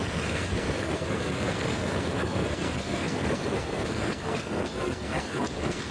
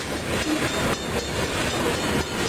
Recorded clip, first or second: second